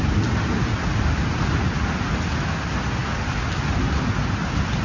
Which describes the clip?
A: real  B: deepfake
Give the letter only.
A